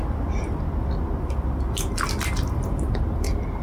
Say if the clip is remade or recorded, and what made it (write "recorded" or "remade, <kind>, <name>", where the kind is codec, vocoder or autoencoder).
recorded